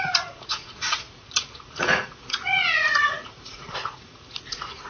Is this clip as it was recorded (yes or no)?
no